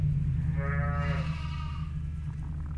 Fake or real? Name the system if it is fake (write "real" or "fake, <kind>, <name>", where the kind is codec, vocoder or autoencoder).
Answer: real